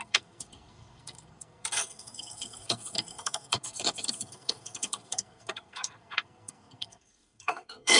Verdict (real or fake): fake